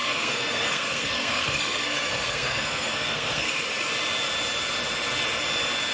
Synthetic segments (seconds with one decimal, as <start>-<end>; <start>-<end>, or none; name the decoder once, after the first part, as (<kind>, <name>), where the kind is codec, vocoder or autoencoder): 0.0-3.5 (codec, SNAC)